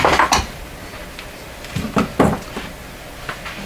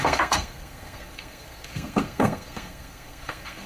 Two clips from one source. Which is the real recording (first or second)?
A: first